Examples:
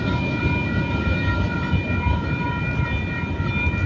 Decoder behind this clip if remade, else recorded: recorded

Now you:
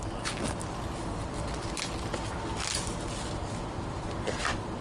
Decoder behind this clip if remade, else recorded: recorded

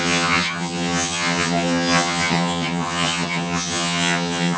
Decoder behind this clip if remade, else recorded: remade, vocoder, HiFi-GAN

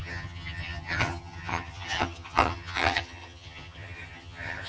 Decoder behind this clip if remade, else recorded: remade, vocoder, HiFi-GAN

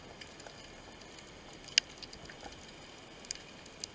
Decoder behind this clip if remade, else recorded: recorded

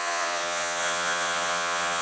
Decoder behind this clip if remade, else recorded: remade, vocoder, Vocos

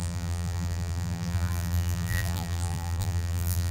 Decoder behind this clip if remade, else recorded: remade, vocoder, BigVGAN v2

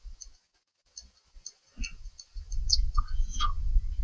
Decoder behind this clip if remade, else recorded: remade, vocoder, Vocos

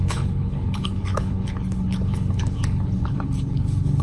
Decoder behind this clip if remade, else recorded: remade, codec, HILCodec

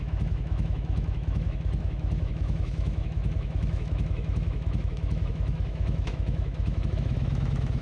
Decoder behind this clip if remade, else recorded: remade, autoencoder, DAC-VAE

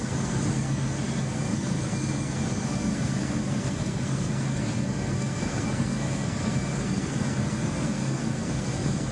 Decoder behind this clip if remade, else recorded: remade, codec, SNAC